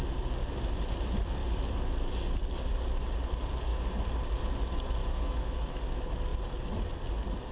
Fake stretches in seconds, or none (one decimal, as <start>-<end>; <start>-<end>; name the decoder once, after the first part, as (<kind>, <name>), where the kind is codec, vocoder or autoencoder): 5.0-5.7 (autoencoder, DAC-VAE)